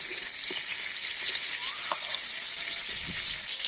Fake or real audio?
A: real